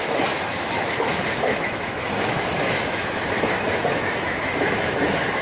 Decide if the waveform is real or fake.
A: fake